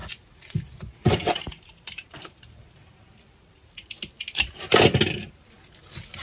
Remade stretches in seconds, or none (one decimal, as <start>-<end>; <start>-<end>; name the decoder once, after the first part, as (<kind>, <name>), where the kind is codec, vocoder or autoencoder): 0.0-3.7 (vocoder, BigVGAN v2)